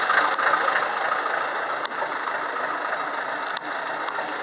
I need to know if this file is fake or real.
real